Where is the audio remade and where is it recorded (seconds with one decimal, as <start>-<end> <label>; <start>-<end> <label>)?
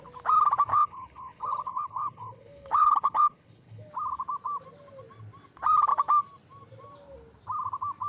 0.0-0.7 recorded; 0.7-3.9 remade; 3.9-8.1 recorded